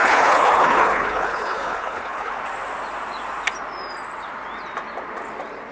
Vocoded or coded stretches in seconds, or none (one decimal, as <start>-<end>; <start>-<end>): 0.0-2.3